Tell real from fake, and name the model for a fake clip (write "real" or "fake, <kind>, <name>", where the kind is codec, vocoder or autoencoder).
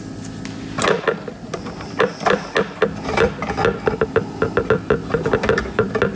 real